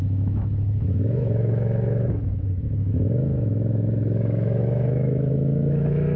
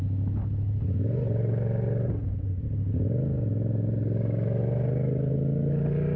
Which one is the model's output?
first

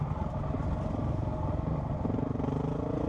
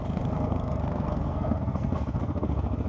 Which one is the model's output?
second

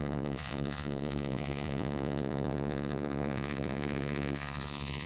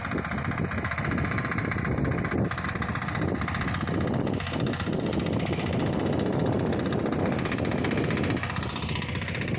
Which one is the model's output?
first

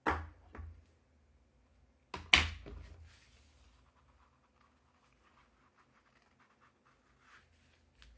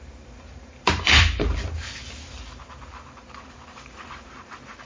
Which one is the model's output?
second